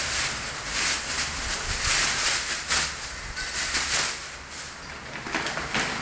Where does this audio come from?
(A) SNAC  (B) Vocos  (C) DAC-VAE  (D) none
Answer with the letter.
D